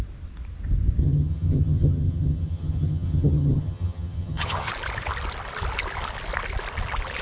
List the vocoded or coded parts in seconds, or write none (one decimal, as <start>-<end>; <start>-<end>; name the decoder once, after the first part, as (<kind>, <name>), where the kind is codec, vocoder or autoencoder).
1.0-4.7 (vocoder, HiFi-GAN)

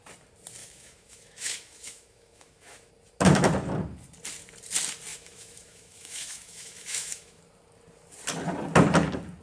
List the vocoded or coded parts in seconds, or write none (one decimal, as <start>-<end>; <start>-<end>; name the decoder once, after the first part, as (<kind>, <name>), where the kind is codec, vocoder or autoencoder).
0.6-2.9 (autoencoder, DAC-VAE); 5.1-7.4

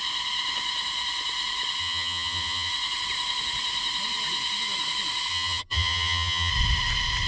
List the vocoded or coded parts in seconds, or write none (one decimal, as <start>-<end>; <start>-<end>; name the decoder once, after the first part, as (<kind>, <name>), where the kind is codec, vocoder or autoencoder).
1.8-2.7 (vocoder, HiFi-GAN); 5.3-6.5